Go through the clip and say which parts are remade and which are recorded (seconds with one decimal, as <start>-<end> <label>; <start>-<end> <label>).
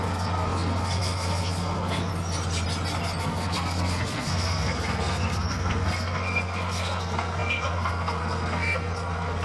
0.0-2.1 remade; 2.1-3.2 recorded; 3.2-9.4 remade